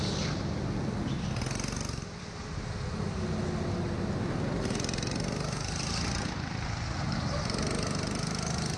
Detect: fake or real real